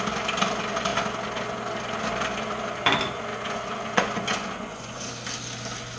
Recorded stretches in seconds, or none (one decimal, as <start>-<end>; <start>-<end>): 0.0-3.3; 5.1-6.0